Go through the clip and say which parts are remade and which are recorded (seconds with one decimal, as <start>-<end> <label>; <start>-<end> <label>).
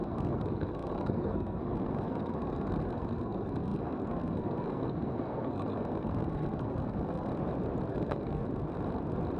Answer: 0.0-7.3 remade; 7.3-7.9 recorded; 7.9-8.4 remade; 8.4-9.4 recorded